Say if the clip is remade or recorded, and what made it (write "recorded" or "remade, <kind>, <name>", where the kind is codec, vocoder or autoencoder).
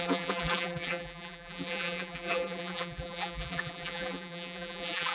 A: remade, vocoder, BigVGAN v2